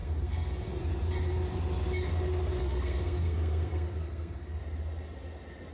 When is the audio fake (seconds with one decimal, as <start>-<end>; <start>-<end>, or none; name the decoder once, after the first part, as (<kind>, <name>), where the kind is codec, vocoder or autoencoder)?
0.0-0.8 (codec, SNAC); 2.6-4.6